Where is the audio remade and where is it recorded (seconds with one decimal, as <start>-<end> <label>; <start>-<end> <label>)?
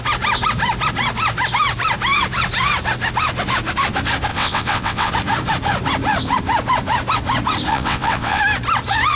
0.0-4.3 recorded; 4.3-5.1 remade; 5.1-7.7 recorded; 7.7-8.4 remade; 8.4-9.2 recorded